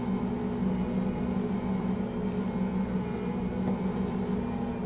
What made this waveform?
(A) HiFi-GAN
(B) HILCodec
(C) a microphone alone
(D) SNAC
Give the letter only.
C